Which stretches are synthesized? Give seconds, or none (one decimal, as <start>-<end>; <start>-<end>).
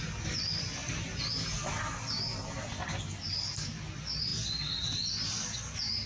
none